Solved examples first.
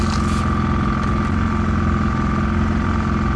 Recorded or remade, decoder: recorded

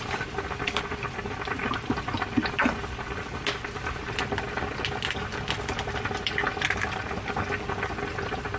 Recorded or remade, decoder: recorded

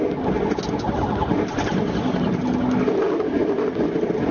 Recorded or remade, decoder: recorded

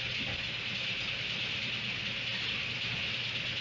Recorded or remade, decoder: recorded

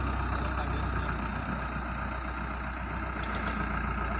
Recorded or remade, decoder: recorded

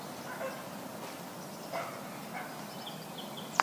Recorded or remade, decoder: recorded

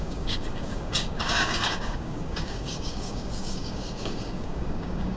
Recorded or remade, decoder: remade, codec, DAC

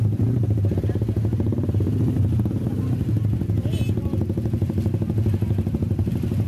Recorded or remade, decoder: recorded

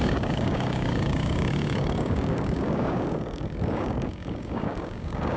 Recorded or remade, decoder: remade, codec, DAC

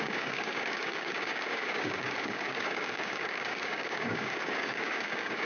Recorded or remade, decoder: remade, codec, DAC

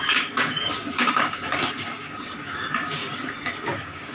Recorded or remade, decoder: remade, codec, DAC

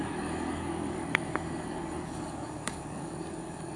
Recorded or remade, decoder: remade, codec, DAC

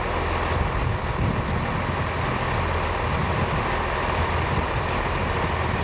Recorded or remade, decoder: recorded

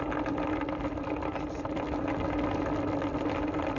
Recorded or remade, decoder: recorded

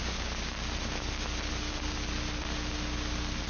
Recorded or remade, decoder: recorded